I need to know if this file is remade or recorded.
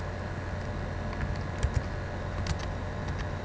recorded